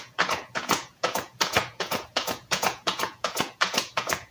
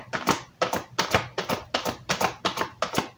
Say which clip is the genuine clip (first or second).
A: second